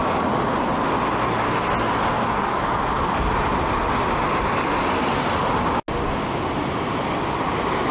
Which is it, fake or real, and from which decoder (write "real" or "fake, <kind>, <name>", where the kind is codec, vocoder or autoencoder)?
real